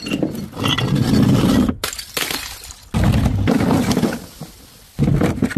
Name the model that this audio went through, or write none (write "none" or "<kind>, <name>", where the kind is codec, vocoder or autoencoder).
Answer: none